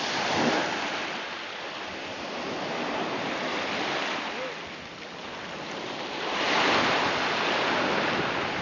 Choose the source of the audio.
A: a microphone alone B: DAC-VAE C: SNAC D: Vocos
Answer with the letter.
A